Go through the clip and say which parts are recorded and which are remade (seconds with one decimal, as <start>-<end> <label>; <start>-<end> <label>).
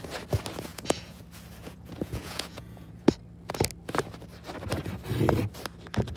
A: 0.0-0.7 recorded; 0.7-1.2 remade; 1.2-1.6 recorded; 1.6-3.1 remade; 3.1-6.2 recorded